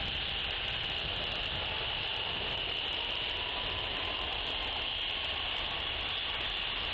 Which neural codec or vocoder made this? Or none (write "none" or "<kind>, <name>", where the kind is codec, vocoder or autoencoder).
none